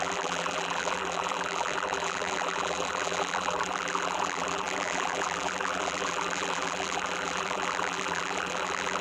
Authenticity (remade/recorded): remade